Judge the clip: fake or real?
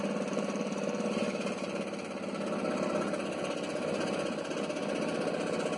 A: real